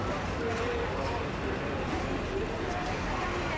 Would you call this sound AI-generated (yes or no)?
no